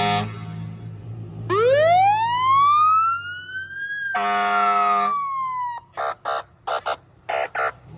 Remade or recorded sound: recorded